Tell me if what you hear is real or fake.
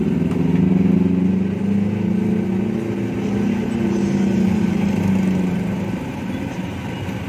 real